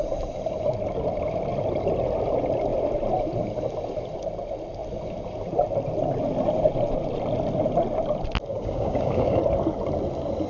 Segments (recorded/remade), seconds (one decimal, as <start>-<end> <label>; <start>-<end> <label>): 0.0-8.5 recorded; 8.5-9.4 remade; 9.4-10.5 recorded

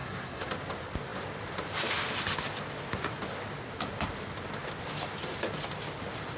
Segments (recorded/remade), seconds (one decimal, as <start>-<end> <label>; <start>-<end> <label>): 0.0-0.5 remade; 0.5-6.4 recorded

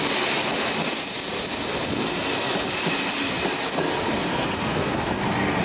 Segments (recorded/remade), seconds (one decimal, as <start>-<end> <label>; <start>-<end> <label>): 0.0-4.3 recorded; 4.3-5.1 remade; 5.1-5.6 recorded

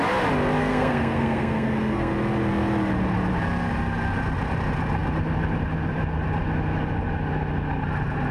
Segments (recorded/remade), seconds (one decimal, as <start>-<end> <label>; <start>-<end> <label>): 0.0-0.6 recorded; 0.6-2.1 remade; 2.1-8.3 recorded

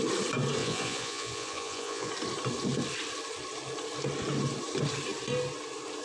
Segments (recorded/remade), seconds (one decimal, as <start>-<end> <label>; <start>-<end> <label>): 0.0-0.6 recorded; 0.6-2.1 remade; 2.1-6.0 recorded

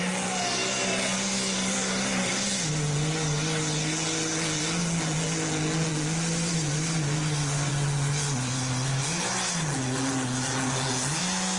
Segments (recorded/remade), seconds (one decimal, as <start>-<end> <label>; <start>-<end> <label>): 0.0-11.6 recorded

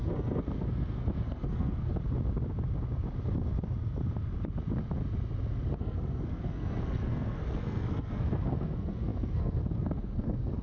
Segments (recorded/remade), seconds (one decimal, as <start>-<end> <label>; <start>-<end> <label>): 0.0-1.9 remade; 1.9-5.8 recorded; 5.8-10.6 remade

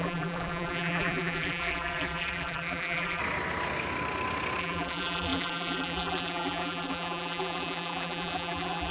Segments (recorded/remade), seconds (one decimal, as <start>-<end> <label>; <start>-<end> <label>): 0.0-3.2 remade; 3.2-4.6 recorded; 4.6-8.9 remade